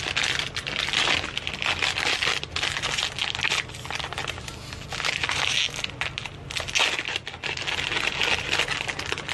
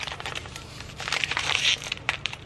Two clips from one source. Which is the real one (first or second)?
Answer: first